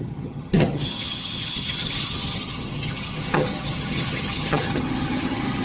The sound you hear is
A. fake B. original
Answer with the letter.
A